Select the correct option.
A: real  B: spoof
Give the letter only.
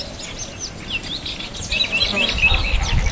A